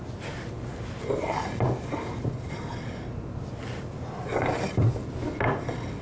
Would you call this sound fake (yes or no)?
no